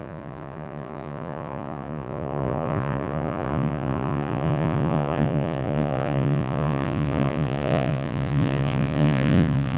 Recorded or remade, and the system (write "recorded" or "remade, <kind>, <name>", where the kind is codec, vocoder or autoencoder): remade, vocoder, Vocos